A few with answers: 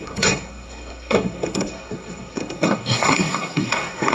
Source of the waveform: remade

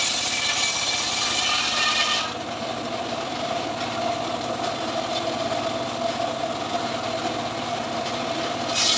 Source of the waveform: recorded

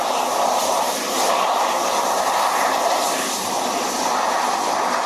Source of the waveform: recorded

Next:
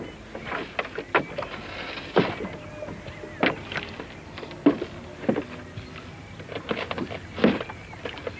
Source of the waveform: recorded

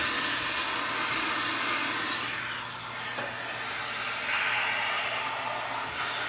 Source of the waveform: recorded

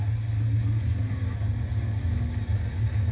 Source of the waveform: recorded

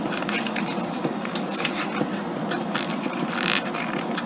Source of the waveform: remade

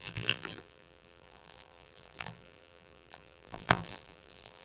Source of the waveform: remade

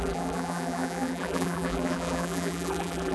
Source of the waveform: remade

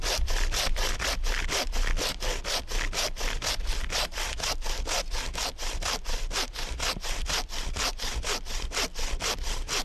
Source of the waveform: recorded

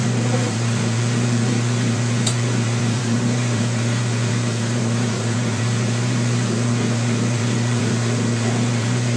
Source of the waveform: remade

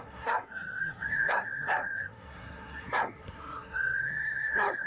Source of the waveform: remade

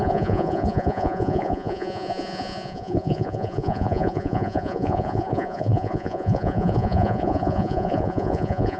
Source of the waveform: remade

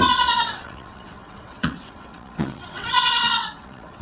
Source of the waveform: remade